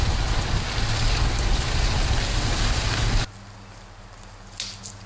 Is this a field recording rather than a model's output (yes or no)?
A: yes